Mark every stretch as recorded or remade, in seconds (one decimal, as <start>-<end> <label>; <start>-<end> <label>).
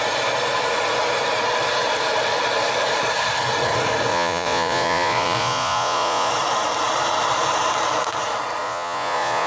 0.0-4.1 recorded; 4.1-6.3 remade; 6.3-8.6 recorded; 8.6-9.5 remade